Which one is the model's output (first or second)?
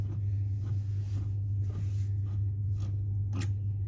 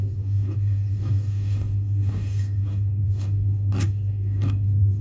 second